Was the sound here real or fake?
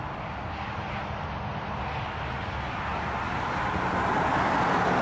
real